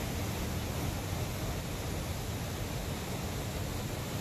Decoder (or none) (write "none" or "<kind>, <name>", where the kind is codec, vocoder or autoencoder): none